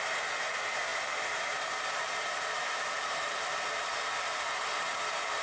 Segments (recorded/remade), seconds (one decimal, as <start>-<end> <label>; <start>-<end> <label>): 0.0-0.9 recorded; 0.9-4.1 remade; 4.1-5.4 recorded